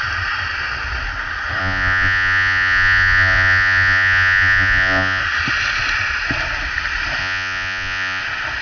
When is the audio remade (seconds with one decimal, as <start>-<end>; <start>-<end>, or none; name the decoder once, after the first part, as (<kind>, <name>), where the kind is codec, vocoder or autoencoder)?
1.6-5.2 (vocoder, Vocos); 7.2-8.2